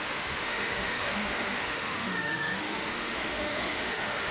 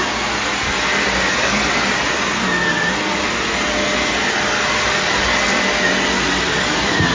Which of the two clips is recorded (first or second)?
second